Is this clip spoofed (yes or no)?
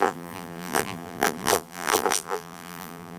yes